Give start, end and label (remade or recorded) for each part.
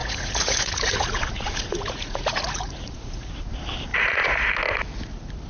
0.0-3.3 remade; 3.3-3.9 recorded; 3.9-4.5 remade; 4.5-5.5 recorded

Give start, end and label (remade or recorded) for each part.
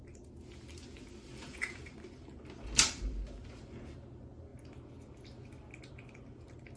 0.0-1.3 recorded; 1.3-1.8 remade; 1.8-6.8 recorded